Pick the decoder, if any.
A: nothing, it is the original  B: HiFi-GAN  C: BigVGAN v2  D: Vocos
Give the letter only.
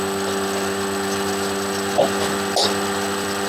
A